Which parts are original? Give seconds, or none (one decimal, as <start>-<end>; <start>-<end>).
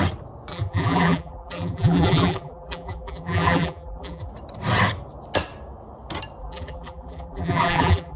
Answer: 0.0-0.5; 4.3-6.4